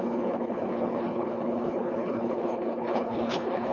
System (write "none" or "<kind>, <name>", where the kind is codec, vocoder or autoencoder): codec, HILCodec